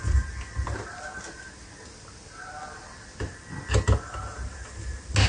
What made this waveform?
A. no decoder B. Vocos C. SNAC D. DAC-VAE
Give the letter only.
A